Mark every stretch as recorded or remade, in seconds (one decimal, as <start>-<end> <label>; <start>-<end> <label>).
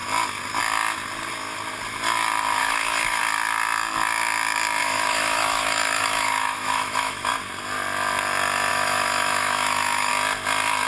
0.0-2.6 recorded; 2.6-3.2 remade; 3.2-4.8 recorded; 4.8-7.3 remade; 7.3-8.7 recorded; 8.7-10.1 remade; 10.1-10.9 recorded